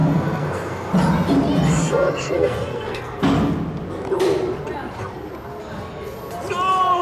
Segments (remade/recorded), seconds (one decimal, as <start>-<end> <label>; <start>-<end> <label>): 0.0-0.9 remade; 0.9-1.8 recorded; 1.8-3.2 remade; 3.2-7.0 recorded